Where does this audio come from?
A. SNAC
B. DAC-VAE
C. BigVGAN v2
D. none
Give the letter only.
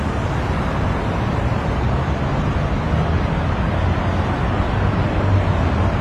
D